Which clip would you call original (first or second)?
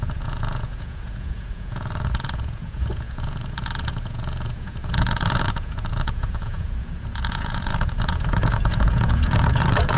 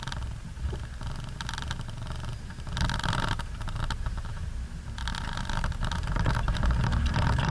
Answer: second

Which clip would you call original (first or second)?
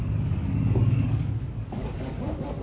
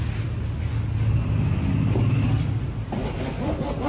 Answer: second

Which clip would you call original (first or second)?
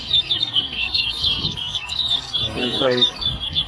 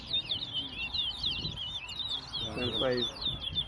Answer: second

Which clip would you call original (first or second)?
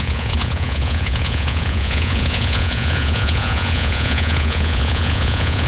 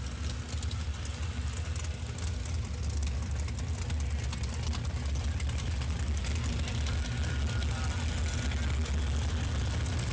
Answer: second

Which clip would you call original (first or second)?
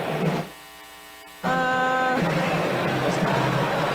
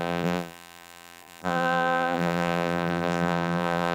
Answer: first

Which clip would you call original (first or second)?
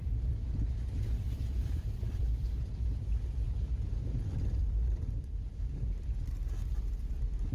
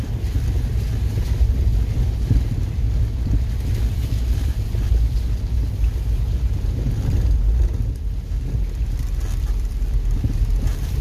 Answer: second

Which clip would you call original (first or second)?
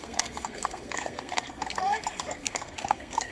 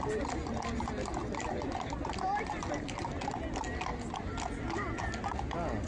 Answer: second